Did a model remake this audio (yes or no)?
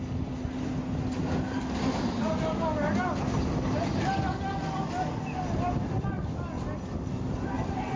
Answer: no